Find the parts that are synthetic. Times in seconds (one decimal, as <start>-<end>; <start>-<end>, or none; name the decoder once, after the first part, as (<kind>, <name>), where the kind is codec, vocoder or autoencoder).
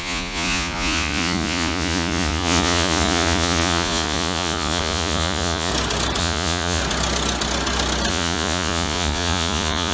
0.0-5.7 (vocoder, Vocos); 6.2-6.8; 8.1-9.9